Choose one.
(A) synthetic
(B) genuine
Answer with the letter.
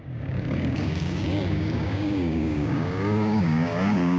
A